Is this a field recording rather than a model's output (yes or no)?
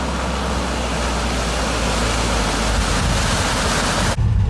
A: yes